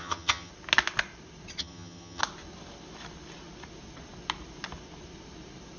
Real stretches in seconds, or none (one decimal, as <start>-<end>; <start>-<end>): 0.5-1.6; 2.2-5.8